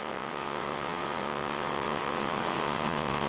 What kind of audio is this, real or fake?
fake